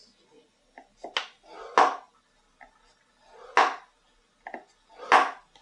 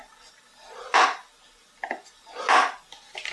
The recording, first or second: first